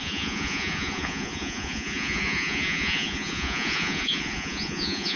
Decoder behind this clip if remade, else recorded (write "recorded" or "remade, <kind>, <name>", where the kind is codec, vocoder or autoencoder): remade, vocoder, Vocos